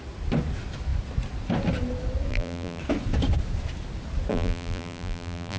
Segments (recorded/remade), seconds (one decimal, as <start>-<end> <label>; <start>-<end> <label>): 0.0-2.3 recorded; 2.3-2.8 remade; 2.8-4.3 recorded; 4.3-5.6 remade